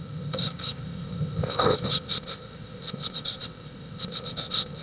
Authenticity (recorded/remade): remade